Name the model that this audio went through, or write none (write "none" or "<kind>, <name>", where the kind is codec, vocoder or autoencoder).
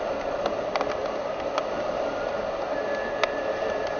none